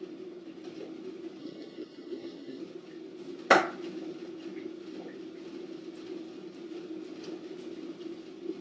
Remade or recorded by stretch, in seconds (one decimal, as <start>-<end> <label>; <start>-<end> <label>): 0.0-1.4 recorded; 1.4-2.6 remade; 2.6-8.6 recorded

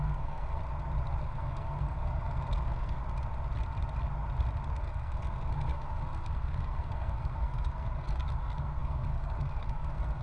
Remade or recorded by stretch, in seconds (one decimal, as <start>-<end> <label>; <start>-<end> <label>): 0.0-0.6 remade; 0.6-1.2 recorded; 1.2-3.0 remade; 3.0-4.8 recorded; 4.8-10.2 remade

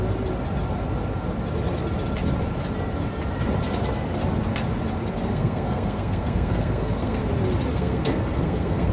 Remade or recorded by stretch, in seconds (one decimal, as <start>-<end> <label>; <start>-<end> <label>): 0.0-5.3 recorded; 5.3-7.2 remade; 7.2-7.7 recorded; 7.7-8.9 remade

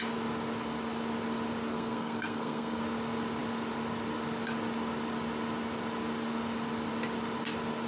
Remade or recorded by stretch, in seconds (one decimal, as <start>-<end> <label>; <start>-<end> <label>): 0.0-1.7 recorded; 1.7-2.8 remade; 2.8-7.9 recorded

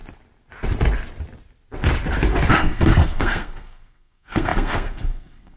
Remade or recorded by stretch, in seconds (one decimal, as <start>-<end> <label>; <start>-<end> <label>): 0.0-2.5 recorded; 2.5-5.6 remade

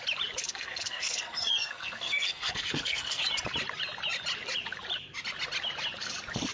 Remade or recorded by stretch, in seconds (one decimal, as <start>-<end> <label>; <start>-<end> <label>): 0.0-0.4 recorded; 0.4-3.2 remade; 3.2-6.5 recorded